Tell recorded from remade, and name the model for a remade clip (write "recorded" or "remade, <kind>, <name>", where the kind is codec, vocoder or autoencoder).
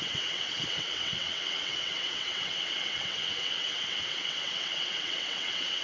remade, vocoder, WaveNeXt